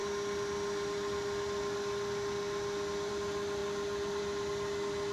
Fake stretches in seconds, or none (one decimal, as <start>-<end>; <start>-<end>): none